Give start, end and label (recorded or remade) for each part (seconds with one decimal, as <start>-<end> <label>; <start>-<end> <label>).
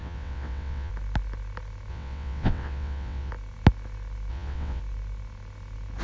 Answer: 0.0-0.9 remade; 0.9-1.9 recorded; 1.9-3.3 remade; 3.3-4.3 recorded; 4.3-4.8 remade; 4.8-6.0 recorded